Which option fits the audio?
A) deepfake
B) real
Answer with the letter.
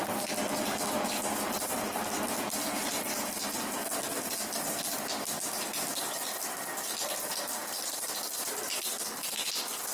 B